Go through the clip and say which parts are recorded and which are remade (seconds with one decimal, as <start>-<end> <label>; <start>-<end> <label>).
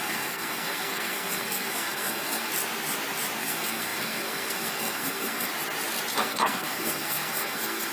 0.0-2.5 remade; 2.5-3.4 recorded; 3.4-5.5 remade; 5.5-6.1 recorded; 6.1-7.9 remade